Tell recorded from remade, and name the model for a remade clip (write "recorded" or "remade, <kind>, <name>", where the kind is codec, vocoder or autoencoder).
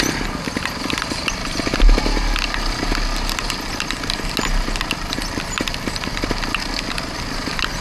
recorded